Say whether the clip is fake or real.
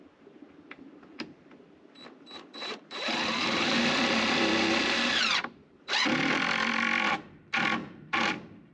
fake